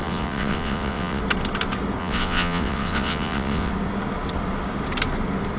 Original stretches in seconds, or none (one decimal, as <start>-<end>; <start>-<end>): 1.2-2.0; 3.7-5.6